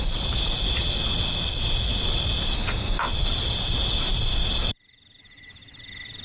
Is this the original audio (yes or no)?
yes